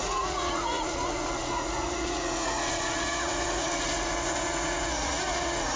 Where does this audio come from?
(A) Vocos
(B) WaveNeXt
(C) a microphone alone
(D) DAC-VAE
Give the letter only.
A